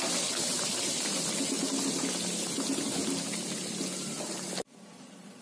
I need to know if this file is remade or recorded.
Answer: recorded